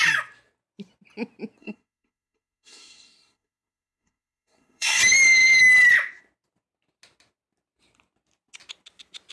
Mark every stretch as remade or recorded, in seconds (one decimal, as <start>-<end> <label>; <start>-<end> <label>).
0.0-1.6 recorded; 1.6-5.0 remade; 5.0-9.3 recorded